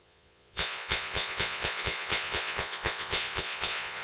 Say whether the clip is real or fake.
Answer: fake